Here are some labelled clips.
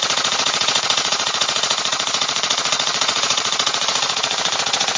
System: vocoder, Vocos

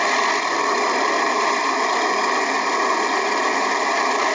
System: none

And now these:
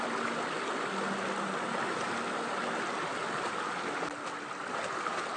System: none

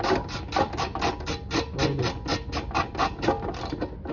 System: none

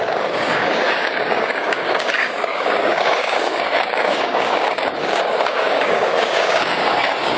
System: codec, DAC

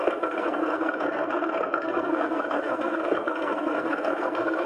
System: codec, SNAC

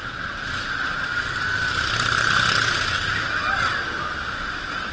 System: none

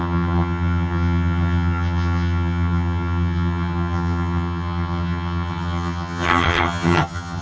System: vocoder, HiFi-GAN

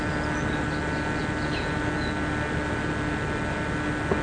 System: none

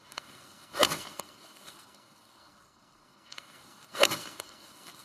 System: codec, SNAC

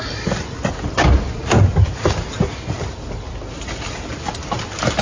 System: none